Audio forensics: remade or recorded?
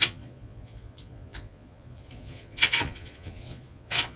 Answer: remade